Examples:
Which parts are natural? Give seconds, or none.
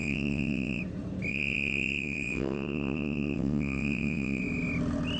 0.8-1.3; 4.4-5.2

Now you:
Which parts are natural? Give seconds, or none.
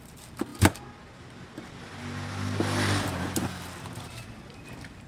0.0-0.5; 1.8-5.1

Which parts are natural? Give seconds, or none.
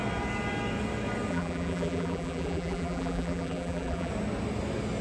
0.0-1.3; 4.1-5.0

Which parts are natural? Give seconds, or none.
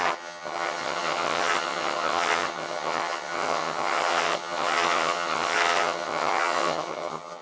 none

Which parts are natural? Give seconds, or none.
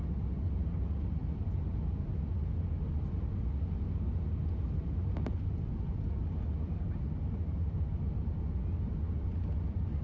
0.0-10.0